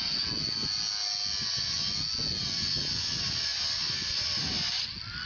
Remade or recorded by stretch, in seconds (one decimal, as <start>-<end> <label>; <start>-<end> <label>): 0.0-5.3 recorded